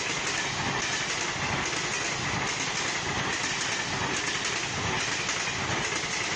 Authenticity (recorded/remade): recorded